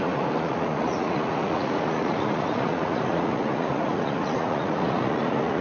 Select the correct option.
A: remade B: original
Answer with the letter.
A